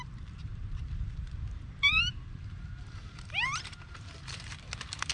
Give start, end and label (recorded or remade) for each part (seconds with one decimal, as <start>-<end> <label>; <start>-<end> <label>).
0.0-5.1 remade